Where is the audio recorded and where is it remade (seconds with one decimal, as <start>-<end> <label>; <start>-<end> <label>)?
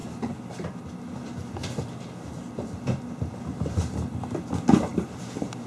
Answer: 0.0-0.8 recorded; 0.8-1.6 remade; 1.6-3.7 recorded; 3.7-5.7 remade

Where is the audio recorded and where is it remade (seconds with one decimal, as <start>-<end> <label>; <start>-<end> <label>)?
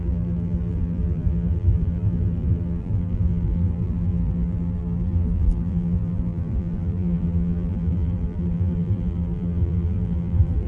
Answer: 0.0-10.7 remade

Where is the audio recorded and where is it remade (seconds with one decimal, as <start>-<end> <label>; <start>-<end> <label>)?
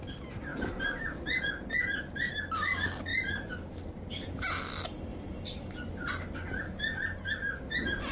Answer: 0.0-0.5 recorded; 0.5-1.5 remade; 1.5-3.1 recorded; 3.1-3.7 remade; 3.7-5.1 recorded; 5.1-5.7 remade; 5.7-8.1 recorded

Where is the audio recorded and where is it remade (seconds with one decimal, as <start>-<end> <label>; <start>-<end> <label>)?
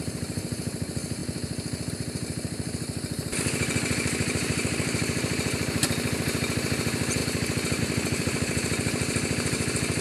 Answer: 0.0-1.2 remade; 1.2-1.9 recorded; 1.9-10.0 remade